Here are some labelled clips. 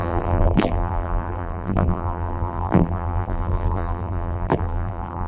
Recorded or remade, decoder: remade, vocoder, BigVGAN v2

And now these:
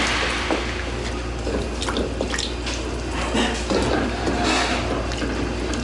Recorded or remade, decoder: recorded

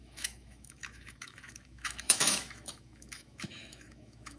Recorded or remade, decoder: remade, autoencoder, DAC-VAE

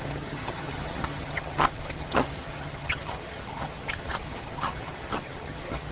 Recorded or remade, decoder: remade, vocoder, HiFi-GAN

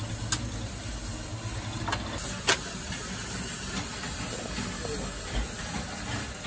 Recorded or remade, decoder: recorded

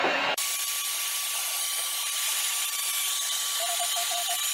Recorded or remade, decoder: remade, vocoder, BigVGAN v2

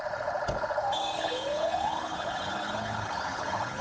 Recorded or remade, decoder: remade, codec, HILCodec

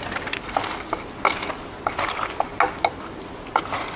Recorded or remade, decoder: recorded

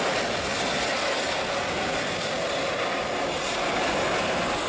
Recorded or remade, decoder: recorded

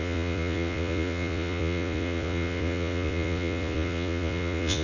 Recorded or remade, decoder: remade, vocoder, Vocos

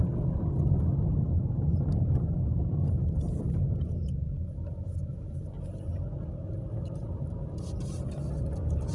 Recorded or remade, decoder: recorded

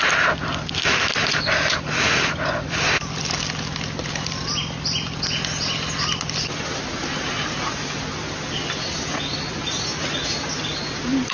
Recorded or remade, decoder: recorded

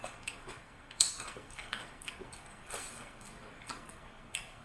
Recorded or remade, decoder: remade, codec, SNAC